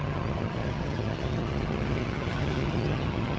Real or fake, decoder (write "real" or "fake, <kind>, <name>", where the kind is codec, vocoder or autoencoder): fake, vocoder, HiFi-GAN